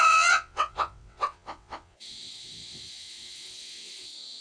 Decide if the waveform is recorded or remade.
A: remade